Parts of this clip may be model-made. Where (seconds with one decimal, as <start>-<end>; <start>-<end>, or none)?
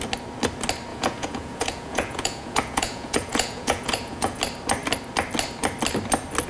0.9-4.4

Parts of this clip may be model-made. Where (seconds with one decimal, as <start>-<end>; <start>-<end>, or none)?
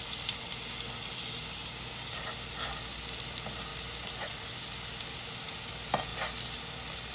none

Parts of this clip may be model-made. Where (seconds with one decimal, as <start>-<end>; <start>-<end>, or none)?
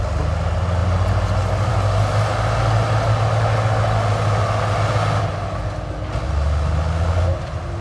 none